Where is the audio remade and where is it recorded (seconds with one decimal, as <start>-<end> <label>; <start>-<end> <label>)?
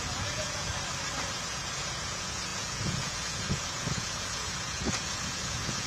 0.0-0.7 remade; 0.7-1.5 recorded; 1.5-5.9 remade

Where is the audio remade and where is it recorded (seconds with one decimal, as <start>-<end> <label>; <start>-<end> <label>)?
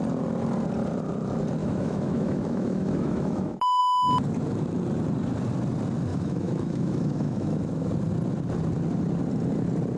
0.0-1.6 recorded; 1.6-3.8 remade; 3.8-6.1 recorded; 6.1-7.9 remade; 7.9-10.0 recorded